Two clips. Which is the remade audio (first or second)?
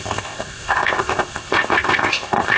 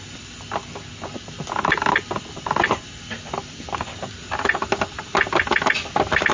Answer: first